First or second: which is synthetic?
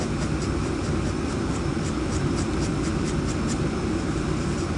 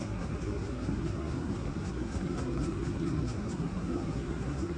second